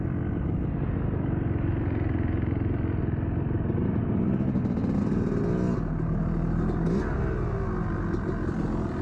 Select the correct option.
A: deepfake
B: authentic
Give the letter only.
B